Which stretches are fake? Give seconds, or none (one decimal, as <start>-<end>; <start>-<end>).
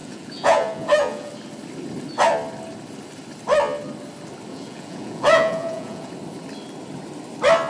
0.0-1.3; 4.5-6.1